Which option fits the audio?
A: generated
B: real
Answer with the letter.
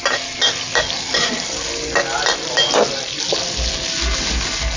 B